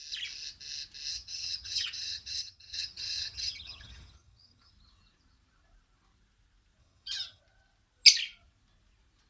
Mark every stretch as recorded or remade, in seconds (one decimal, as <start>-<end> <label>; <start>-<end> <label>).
0.0-1.1 recorded; 1.1-4.7 remade; 4.7-6.8 recorded; 6.8-7.4 remade; 7.4-9.3 recorded